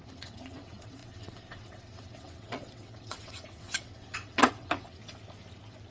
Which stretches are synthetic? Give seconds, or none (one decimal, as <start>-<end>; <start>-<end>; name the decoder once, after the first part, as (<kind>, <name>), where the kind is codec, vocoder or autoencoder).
0.0-5.0 (vocoder, WaveNeXt)